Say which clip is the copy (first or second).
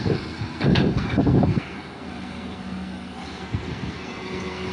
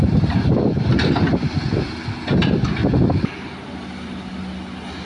first